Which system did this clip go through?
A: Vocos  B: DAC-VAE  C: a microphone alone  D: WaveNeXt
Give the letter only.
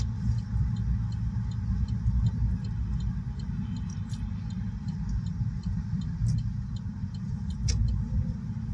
C